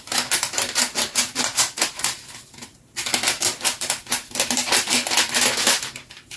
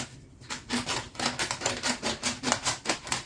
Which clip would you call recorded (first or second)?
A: first